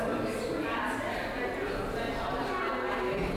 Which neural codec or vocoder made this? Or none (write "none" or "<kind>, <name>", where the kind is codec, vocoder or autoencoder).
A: none